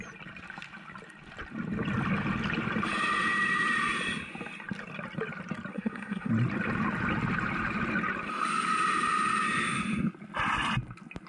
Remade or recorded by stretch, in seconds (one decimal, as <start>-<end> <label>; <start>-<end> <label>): 0.0-5.7 recorded; 5.7-6.3 remade; 6.3-11.3 recorded